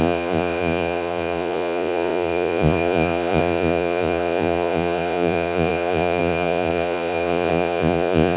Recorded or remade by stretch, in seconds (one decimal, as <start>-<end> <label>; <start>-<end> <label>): 0.0-8.4 remade